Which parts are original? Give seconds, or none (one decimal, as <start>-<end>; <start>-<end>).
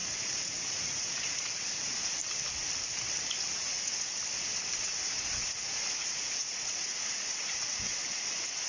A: 2.2-3.5; 4.2-4.8